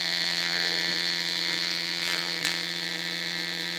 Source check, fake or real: fake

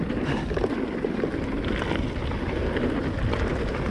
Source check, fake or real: real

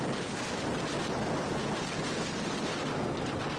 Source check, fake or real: real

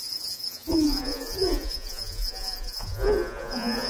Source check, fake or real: fake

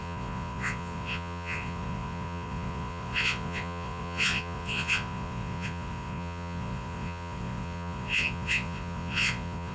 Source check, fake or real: fake